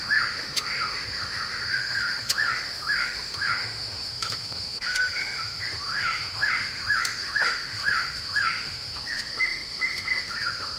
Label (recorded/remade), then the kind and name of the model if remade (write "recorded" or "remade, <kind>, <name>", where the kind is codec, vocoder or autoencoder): remade, autoencoder, DAC-VAE